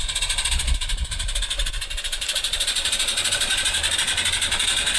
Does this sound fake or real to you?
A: fake